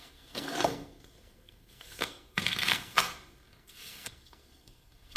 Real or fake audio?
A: fake